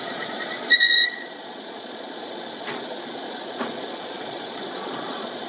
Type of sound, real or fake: fake